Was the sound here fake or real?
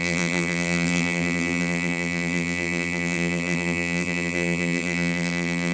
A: fake